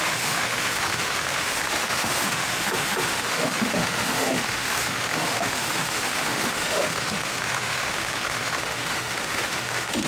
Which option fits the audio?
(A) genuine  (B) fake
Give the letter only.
B